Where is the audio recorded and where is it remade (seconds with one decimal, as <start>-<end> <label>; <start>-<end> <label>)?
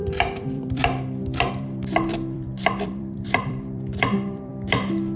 0.0-0.8 remade; 0.8-1.5 recorded; 1.5-4.5 remade; 4.5-5.2 recorded